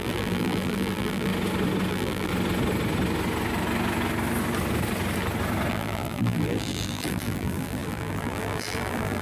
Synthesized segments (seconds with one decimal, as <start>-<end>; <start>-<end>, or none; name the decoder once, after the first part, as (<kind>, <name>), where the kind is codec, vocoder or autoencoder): 0.0-1.3 (vocoder, BigVGAN v2); 1.9-2.3; 5.7-9.2

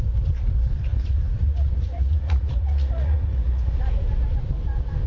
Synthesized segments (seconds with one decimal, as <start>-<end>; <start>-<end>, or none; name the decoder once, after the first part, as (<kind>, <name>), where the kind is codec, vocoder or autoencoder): 0.9-3.8 (vocoder, Vocos)

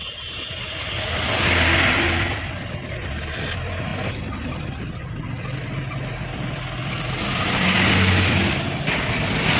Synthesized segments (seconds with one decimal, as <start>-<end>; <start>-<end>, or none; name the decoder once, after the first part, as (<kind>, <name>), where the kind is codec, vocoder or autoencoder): none

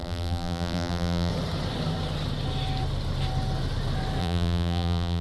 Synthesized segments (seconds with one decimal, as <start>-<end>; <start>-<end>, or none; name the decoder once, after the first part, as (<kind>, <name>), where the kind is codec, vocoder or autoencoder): 0.0-1.3 (vocoder, BigVGAN v2); 4.2-5.2

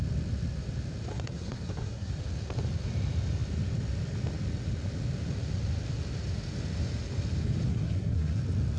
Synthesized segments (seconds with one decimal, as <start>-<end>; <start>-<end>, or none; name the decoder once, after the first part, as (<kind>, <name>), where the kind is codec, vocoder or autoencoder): 1.1-2.1 (codec, SNAC); 7.7-8.4

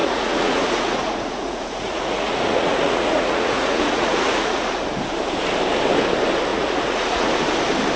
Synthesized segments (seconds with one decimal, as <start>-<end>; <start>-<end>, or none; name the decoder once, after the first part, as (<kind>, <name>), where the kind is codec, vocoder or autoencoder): 0.0-4.8 (vocoder, Vocos); 6.5-7.3

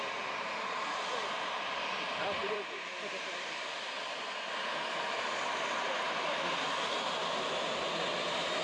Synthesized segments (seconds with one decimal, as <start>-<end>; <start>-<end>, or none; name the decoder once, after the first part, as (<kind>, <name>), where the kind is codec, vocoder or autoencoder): 2.4-7.6 (vocoder, BigVGAN v2)